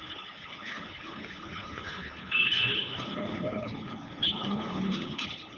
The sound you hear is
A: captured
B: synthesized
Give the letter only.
B